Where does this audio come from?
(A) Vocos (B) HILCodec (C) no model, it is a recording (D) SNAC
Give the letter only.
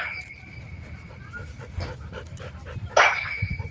C